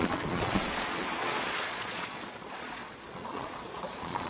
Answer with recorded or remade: remade